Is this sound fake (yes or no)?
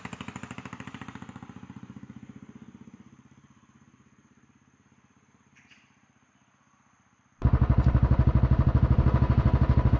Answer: yes